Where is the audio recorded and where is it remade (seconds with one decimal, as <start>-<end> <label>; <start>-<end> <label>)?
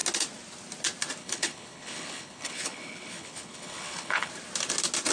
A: 0.0-1.2 recorded; 1.2-4.3 remade; 4.3-5.1 recorded